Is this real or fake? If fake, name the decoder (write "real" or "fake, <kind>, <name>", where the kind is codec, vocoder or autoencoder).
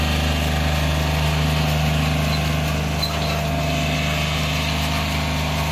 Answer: real